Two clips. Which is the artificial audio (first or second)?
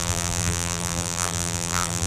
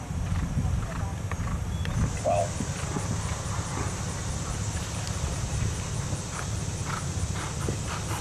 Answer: first